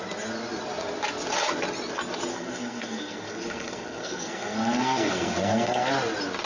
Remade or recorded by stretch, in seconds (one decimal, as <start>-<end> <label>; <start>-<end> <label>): 0.0-2.3 recorded; 2.3-5.9 remade; 5.9-6.5 recorded